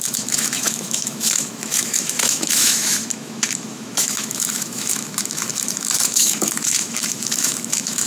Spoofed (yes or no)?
yes